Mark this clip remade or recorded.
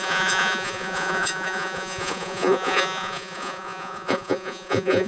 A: remade